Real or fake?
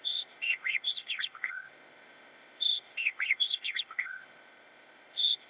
fake